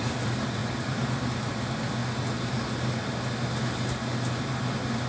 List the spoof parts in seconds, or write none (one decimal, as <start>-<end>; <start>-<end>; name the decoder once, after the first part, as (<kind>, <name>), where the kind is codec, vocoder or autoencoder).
0.0-2.0 (vocoder, BigVGAN v2)